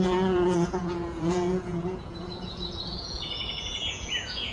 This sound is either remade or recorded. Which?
remade